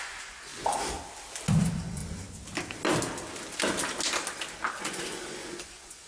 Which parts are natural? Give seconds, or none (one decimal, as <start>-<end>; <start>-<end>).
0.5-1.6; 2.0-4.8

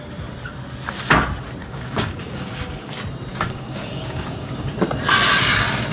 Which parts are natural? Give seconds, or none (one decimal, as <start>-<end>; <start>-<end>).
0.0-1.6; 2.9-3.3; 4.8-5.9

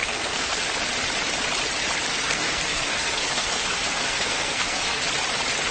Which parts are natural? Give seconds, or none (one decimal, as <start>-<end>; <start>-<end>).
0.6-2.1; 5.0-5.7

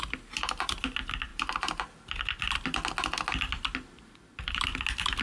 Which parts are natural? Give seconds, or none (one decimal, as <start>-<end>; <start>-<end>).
0.0-5.2

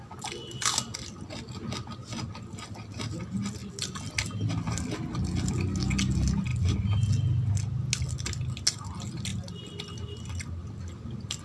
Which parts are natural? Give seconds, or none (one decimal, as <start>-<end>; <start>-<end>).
0.0-11.4